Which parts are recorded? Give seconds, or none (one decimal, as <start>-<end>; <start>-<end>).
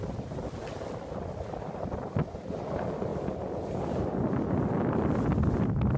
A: 0.0-6.0